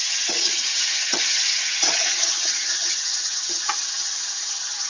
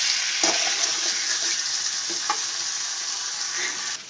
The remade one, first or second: first